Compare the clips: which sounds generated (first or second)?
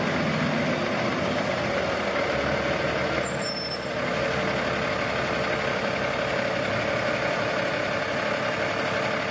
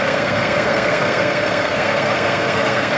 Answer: second